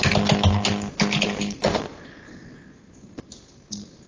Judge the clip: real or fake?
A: real